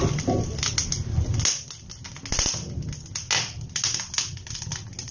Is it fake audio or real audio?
real